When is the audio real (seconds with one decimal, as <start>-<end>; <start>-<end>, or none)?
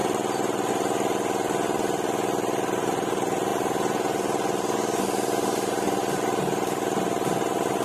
0.0-7.8